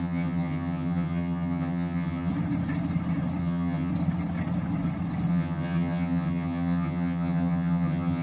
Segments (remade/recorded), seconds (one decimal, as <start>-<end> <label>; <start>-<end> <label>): 0.0-2.3 remade; 2.3-3.4 recorded; 3.4-3.9 remade; 3.9-5.3 recorded; 5.3-8.2 remade